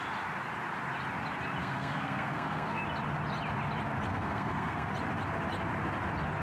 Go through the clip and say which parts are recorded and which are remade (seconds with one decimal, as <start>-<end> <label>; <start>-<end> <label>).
0.0-1.6 recorded; 1.6-2.8 remade; 2.8-4.1 recorded; 4.1-4.9 remade; 4.9-6.4 recorded